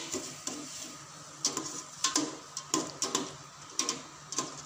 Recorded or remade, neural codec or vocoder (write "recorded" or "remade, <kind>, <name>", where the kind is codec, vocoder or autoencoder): recorded